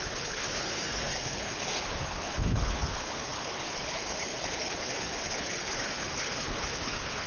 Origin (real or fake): fake